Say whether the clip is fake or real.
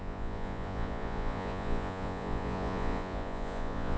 fake